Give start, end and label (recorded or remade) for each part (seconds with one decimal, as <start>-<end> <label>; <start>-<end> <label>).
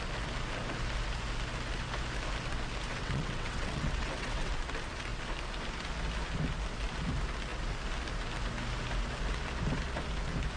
0.0-2.9 recorded; 2.9-4.5 remade; 4.5-10.6 recorded